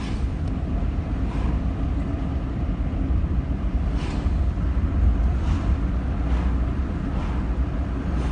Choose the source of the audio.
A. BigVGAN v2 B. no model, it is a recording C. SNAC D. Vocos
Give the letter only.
B